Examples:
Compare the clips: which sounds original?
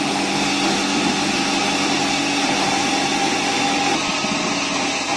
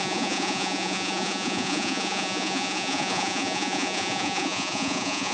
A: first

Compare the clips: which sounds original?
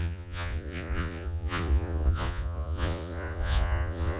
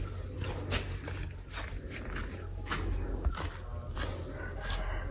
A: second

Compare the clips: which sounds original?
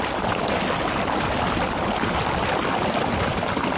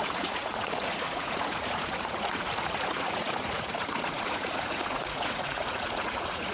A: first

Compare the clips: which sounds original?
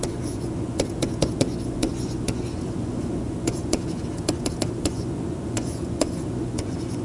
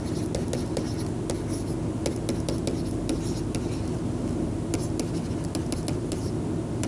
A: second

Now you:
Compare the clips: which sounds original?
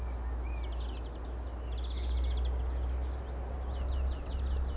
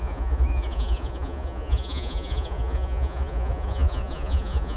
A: first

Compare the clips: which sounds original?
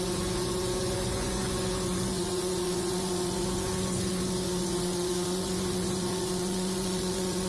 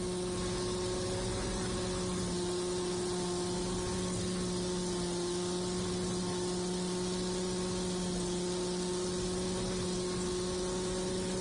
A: second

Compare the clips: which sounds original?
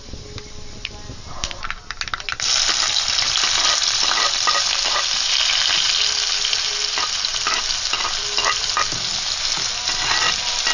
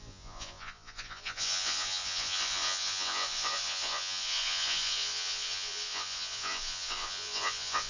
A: first